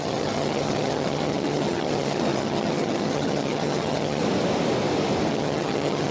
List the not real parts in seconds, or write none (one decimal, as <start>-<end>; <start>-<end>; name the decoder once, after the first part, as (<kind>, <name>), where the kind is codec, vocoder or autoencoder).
0.0-4.2 (vocoder, HiFi-GAN); 5.3-6.1